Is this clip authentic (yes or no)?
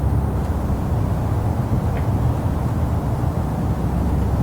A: yes